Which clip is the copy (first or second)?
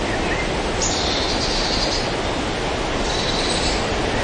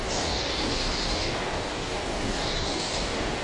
second